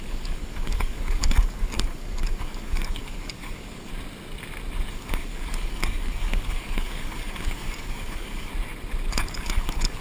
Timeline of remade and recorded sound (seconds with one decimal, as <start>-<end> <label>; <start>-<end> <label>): 0.0-3.9 remade; 3.9-4.9 recorded; 4.9-8.5 remade; 8.5-9.1 recorded; 9.1-10.0 remade